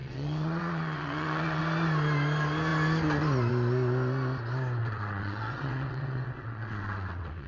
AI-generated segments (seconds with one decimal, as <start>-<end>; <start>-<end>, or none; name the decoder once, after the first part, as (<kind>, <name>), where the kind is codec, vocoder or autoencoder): 0.0-1.6 (vocoder, WaveNeXt); 4.8-7.5